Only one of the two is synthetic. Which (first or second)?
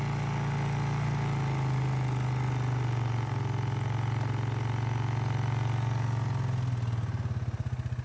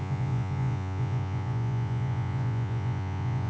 second